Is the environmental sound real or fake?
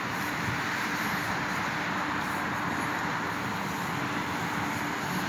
real